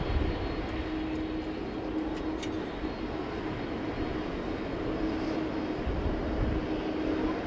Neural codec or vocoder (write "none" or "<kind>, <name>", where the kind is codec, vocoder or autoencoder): none